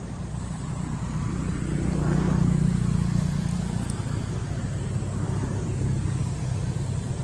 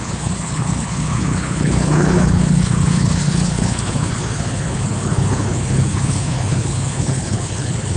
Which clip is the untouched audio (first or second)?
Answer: first